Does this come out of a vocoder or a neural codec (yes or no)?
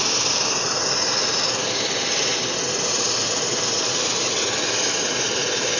no